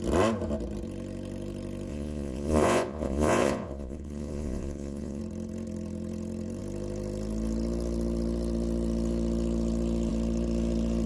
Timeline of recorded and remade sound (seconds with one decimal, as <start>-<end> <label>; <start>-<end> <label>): 0.0-1.9 recorded; 1.9-5.2 remade; 5.2-11.1 recorded